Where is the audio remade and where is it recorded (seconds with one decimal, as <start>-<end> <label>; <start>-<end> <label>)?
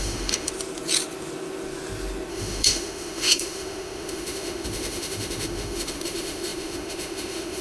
0.0-0.5 remade; 0.5-2.3 recorded; 2.3-7.6 remade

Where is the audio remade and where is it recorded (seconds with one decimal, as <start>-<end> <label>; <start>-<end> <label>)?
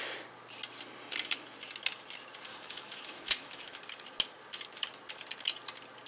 0.0-2.5 recorded; 2.5-3.8 remade; 3.8-6.1 recorded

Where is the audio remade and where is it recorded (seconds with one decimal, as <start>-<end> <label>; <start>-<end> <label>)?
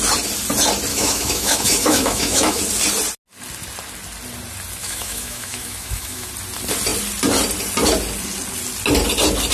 0.0-0.9 recorded; 0.9-2.6 remade; 2.6-4.8 recorded; 4.8-6.3 remade; 6.3-9.5 recorded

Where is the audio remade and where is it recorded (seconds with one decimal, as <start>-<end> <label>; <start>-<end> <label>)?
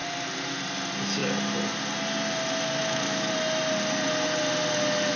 0.0-2.8 recorded; 2.8-3.3 remade; 3.3-5.2 recorded